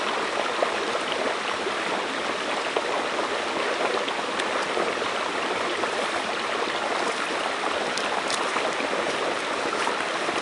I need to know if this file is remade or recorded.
recorded